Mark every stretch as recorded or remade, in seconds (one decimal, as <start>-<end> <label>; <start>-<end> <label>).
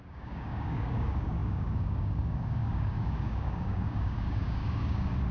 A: 0.0-5.3 remade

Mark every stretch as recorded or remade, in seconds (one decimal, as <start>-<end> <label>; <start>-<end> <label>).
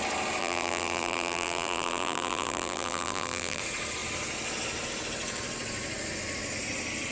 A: 0.0-0.4 recorded; 0.4-3.6 remade; 3.6-7.1 recorded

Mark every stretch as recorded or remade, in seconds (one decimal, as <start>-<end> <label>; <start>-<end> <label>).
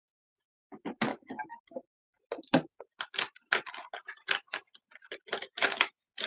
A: 0.0-1.1 recorded; 1.1-2.2 remade; 2.2-6.3 recorded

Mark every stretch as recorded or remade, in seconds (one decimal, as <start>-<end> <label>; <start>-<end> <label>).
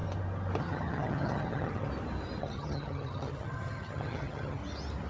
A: 0.0-0.6 recorded; 0.6-1.9 remade; 1.9-2.4 recorded; 2.4-4.6 remade; 4.6-5.1 recorded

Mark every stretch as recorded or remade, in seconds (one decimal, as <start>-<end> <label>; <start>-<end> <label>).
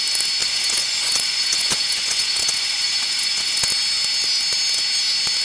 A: 0.0-0.4 recorded; 0.4-3.6 remade; 3.6-5.4 recorded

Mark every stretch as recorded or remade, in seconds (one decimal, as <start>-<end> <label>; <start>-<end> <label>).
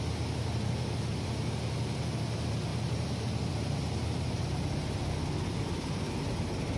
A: 0.0-2.7 recorded; 2.7-5.1 remade; 5.1-6.8 recorded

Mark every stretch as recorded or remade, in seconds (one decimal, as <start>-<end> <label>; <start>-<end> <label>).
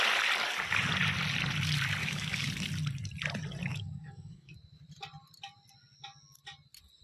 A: 0.0-2.0 recorded; 2.0-2.5 remade; 2.5-3.7 recorded; 3.7-4.5 remade; 4.5-7.0 recorded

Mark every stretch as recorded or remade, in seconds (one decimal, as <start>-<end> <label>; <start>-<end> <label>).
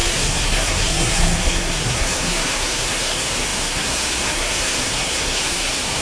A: 0.0-6.0 remade